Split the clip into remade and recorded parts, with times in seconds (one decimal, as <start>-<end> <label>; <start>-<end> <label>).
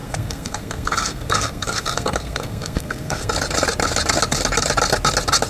0.0-3.3 remade; 3.3-5.5 recorded